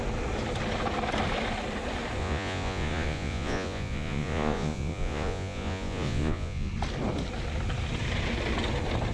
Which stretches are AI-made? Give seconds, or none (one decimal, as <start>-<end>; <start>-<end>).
2.2-6.7